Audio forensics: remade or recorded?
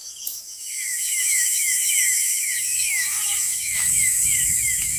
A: remade